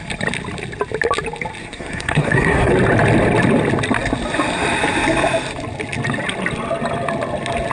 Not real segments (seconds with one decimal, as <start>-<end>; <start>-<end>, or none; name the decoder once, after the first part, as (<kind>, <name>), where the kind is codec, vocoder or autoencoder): 1.6-2.7 (codec, SNAC)